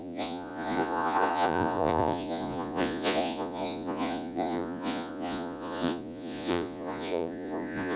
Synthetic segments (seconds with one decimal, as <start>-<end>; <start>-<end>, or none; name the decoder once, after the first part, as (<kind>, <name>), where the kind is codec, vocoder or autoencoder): 0.0-8.0 (vocoder, Vocos)

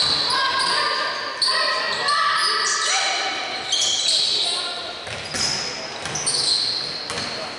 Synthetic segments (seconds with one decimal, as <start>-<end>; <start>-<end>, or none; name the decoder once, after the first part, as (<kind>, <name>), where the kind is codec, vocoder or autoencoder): none

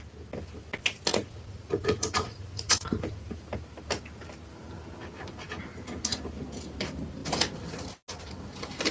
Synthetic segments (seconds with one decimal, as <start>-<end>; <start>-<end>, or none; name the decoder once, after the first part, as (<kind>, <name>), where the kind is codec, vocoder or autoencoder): 1.1-3.1 (vocoder, Vocos)

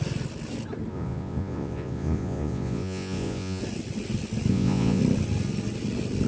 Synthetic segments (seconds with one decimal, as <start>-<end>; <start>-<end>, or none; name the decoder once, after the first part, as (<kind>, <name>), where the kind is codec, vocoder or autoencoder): 0.9-3.6 (vocoder, Vocos); 4.5-5.0

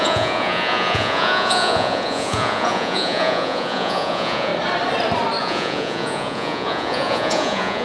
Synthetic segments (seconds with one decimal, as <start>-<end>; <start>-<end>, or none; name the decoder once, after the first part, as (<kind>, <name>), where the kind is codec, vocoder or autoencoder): 0.0-4.5 (vocoder, Vocos); 5.4-7.8

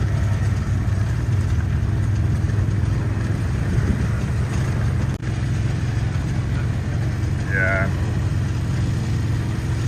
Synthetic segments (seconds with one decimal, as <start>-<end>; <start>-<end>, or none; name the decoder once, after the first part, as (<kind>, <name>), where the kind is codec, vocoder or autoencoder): none

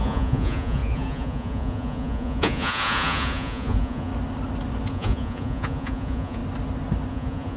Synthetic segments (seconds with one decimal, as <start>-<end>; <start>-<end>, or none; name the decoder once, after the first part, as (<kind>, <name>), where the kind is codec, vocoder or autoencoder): 0.0-4.1 (vocoder, Vocos); 4.9-6.4; 7.1-7.6